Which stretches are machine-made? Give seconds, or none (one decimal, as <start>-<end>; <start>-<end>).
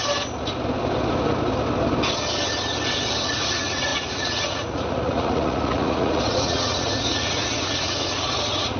3.3-8.8